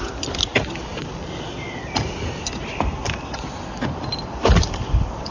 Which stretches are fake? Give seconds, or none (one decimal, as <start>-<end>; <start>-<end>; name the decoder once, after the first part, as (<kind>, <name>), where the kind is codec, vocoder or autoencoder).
none